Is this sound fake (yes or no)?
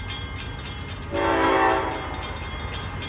no